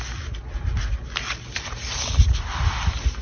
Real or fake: real